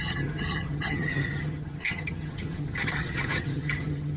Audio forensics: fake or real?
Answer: fake